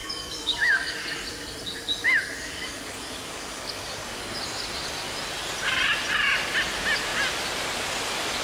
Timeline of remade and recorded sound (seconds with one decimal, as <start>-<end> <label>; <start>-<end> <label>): 0.0-1.2 remade; 1.2-2.0 recorded; 2.0-4.2 remade; 4.2-8.4 recorded